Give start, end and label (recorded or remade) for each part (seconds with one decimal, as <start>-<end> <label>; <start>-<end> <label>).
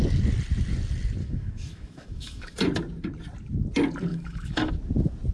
0.0-1.2 recorded; 1.2-2.6 remade; 2.6-4.1 recorded; 4.1-4.7 remade; 4.7-5.3 recorded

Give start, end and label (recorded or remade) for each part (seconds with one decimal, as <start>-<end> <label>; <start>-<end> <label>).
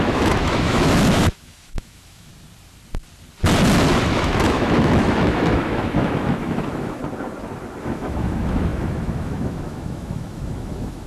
0.0-2.3 remade; 2.3-4.1 recorded; 4.1-7.0 remade; 7.0-7.8 recorded; 7.8-11.1 remade